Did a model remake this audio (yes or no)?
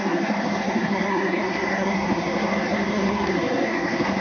yes